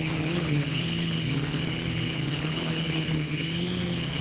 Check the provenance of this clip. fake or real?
fake